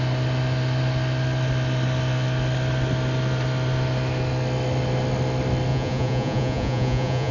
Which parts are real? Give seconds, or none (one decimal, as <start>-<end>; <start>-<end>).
0.0-5.7